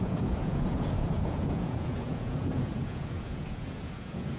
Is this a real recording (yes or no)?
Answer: no